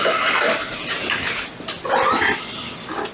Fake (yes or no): no